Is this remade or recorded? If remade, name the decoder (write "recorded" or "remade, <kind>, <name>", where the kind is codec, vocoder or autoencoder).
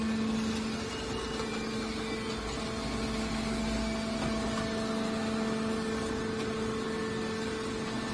recorded